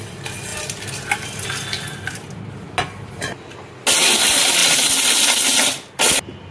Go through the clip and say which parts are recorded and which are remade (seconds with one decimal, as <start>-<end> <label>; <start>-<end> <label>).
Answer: 0.0-6.5 recorded